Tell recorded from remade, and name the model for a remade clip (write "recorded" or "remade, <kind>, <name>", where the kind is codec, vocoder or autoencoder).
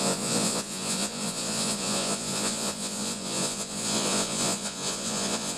remade, vocoder, Vocos